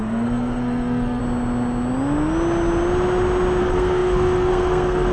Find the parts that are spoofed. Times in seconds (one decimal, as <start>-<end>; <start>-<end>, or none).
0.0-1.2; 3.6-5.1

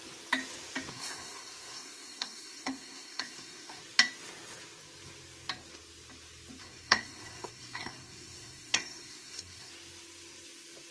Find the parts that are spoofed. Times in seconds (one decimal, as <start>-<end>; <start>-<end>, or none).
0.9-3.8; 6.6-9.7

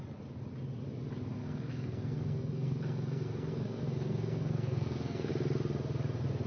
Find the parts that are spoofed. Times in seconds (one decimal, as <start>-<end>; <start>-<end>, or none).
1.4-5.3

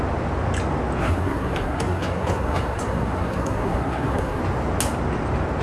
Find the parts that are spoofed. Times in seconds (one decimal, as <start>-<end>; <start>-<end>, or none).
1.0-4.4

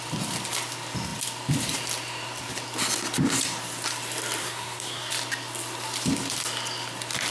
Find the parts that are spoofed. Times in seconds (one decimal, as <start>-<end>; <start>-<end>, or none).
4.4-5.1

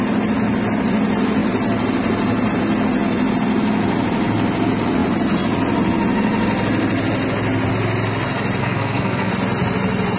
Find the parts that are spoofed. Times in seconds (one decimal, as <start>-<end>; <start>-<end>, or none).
8.6-9.3

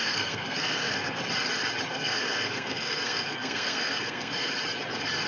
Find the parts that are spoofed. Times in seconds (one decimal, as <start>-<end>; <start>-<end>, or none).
0.0-1.2; 1.9-4.5

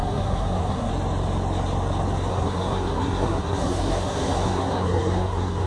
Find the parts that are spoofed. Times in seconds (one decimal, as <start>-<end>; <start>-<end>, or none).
0.0-0.9; 2.3-5.7